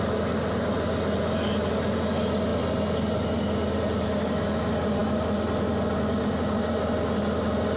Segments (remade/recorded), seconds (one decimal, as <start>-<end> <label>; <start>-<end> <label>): 0.0-7.8 recorded